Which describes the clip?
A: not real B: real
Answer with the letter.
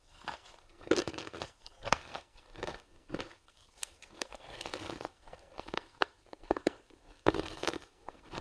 A